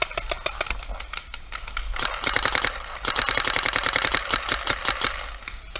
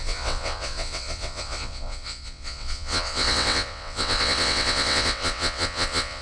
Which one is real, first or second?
first